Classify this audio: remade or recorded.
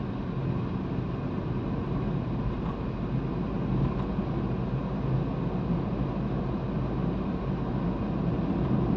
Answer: recorded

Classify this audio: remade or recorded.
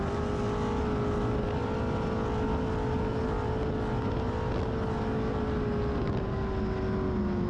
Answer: recorded